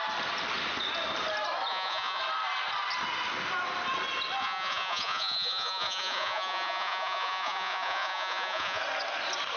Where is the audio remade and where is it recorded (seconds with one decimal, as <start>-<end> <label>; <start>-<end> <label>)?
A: 0.0-1.7 recorded; 1.7-2.2 remade; 2.2-4.4 recorded; 4.4-8.8 remade; 8.8-9.6 recorded